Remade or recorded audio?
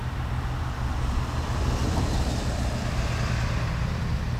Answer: recorded